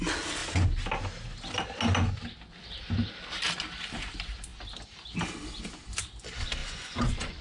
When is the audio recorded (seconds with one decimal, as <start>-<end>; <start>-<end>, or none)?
0.0-6.6